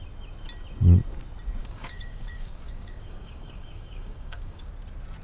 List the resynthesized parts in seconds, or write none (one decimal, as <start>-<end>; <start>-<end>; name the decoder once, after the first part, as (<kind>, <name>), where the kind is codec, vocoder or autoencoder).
1.6-4.7 (codec, DAC)